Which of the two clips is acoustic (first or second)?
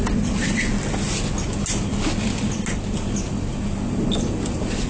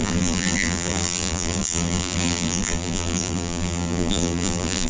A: first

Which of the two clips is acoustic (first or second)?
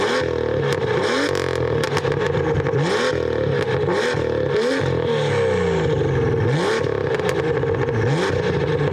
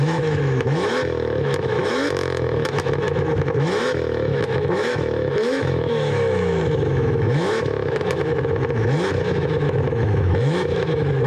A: first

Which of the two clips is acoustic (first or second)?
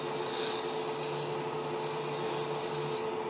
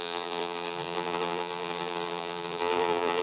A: first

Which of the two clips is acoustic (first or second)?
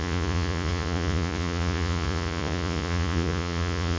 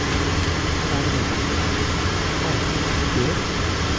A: second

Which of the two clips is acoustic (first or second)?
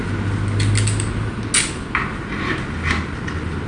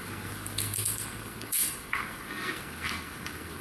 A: first